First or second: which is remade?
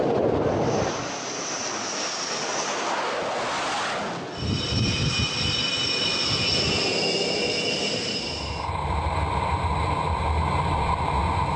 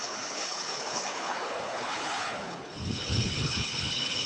second